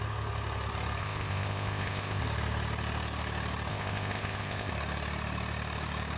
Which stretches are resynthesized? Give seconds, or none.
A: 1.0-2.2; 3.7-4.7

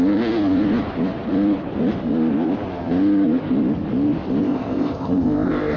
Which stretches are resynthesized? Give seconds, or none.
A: 4.4-5.8

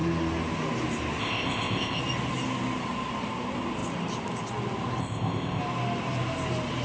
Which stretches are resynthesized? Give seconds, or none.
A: 1.2-2.0; 5.0-5.6

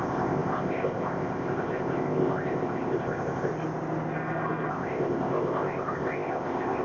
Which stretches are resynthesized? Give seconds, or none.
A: 0.0-3.5; 4.7-6.8

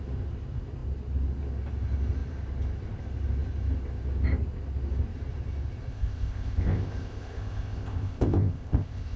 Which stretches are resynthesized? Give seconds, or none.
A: 5.9-9.2

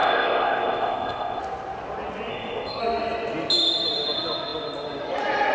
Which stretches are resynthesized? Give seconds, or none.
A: 0.0-1.4; 2.3-2.8

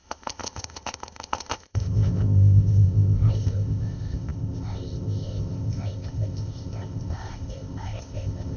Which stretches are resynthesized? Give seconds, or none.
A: 0.0-8.6

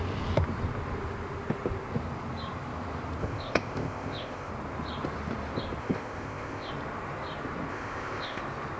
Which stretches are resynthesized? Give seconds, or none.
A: 3.2-4.5; 5.8-6.7; 7.7-8.4